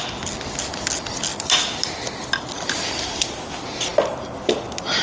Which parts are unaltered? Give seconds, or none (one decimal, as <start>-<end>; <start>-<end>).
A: 0.0-5.0